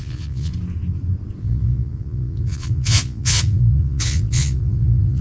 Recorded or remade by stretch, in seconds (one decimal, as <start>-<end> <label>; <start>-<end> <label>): 0.0-0.5 remade; 0.5-1.4 recorded; 1.4-5.2 remade